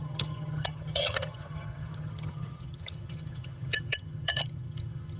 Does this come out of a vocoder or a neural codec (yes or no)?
yes